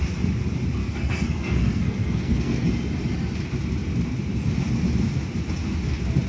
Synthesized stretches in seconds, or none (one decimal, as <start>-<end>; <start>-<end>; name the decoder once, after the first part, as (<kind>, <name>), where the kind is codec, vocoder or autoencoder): 0.8-2.7 (codec, SNAC)